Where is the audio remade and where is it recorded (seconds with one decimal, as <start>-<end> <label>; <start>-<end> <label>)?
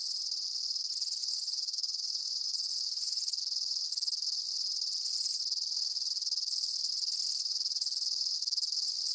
0.0-1.2 recorded; 1.2-3.4 remade; 3.4-9.1 recorded